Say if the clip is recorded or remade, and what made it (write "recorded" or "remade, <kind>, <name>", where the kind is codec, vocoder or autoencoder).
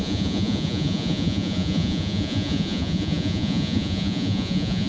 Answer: remade, vocoder, Vocos